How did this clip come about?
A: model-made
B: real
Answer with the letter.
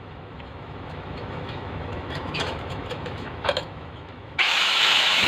A